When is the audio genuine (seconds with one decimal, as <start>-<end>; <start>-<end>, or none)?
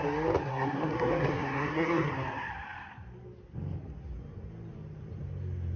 0.0-0.5; 2.1-5.8